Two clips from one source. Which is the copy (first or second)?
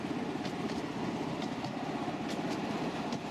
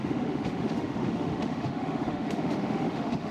second